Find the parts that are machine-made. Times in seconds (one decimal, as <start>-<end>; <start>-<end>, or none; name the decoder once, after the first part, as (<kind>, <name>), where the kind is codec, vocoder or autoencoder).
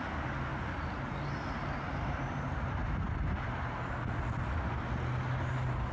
0.5-3.6 (vocoder, BigVGAN v2)